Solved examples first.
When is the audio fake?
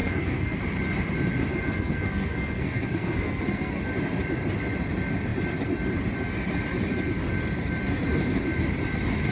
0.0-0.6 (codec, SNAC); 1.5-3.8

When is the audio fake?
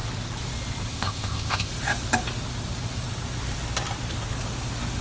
0.9-1.7 (codec, ZipCodec)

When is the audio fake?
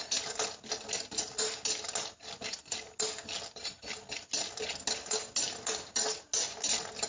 none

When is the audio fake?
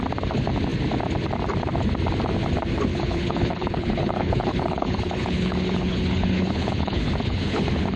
2.9-8.0 (codec, HILCodec)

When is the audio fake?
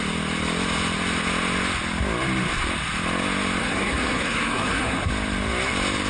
3.6-5.1 (codec, SNAC)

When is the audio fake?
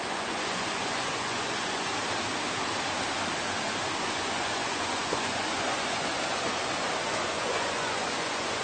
0.0-1.9 (vocoder, Vocos); 4.0-8.6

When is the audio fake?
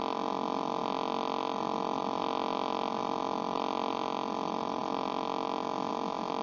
none